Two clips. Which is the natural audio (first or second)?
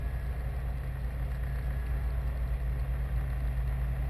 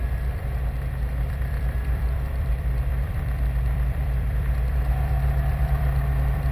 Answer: first